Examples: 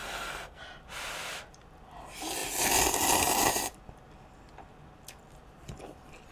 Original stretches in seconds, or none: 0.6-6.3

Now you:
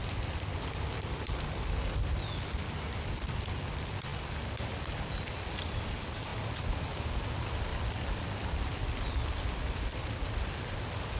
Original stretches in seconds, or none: 0.0-11.2